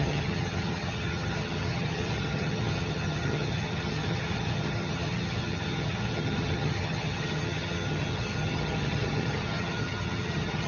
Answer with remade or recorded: remade